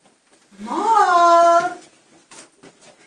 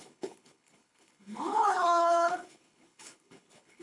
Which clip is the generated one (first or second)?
second